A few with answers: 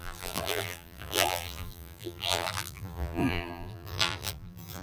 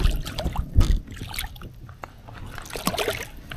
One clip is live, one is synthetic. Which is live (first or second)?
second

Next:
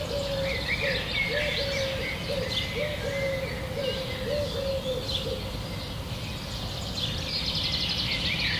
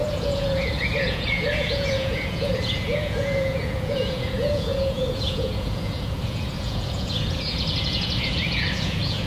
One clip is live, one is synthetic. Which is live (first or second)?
first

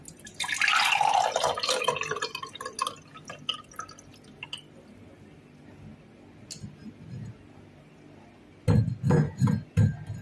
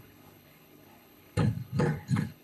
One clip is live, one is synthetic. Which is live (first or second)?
first